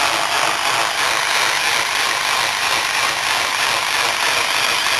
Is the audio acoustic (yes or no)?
yes